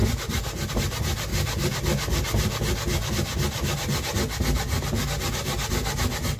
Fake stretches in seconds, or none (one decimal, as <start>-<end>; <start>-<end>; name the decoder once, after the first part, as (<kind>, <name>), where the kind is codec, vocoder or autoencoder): none